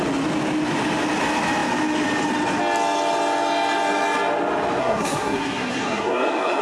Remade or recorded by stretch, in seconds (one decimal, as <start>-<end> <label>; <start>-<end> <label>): 0.0-4.8 recorded; 4.8-6.6 remade